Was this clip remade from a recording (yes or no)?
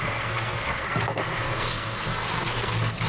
yes